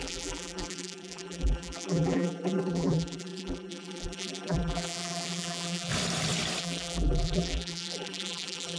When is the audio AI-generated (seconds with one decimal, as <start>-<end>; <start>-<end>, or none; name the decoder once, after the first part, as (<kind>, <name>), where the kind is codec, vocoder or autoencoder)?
0.0-5.9 (vocoder, BigVGAN v2); 6.6-8.8